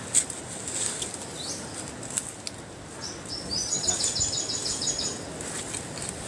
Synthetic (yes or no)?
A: no